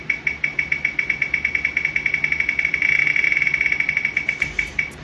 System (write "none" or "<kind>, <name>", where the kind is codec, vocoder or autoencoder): none